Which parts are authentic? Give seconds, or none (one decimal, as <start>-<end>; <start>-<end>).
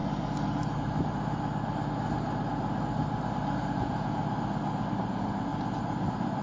0.0-3.6; 4.2-5.1; 5.5-6.4